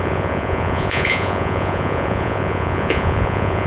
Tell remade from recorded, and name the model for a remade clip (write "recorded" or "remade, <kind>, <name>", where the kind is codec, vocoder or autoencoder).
remade, vocoder, Vocos